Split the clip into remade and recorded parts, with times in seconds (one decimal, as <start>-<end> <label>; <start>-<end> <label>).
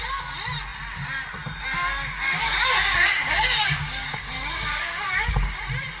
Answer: 0.0-2.0 recorded; 2.0-5.6 remade; 5.6-6.0 recorded